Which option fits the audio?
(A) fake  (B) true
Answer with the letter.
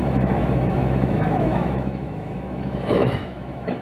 A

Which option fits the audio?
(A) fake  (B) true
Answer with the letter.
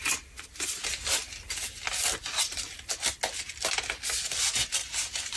B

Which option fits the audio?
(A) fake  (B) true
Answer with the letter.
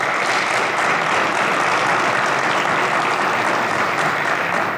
A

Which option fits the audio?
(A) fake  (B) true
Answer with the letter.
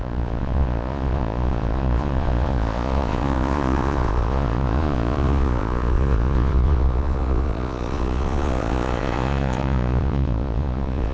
A